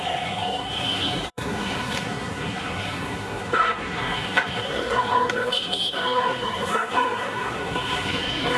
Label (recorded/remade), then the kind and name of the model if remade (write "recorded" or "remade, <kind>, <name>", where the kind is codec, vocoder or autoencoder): remade, codec, SNAC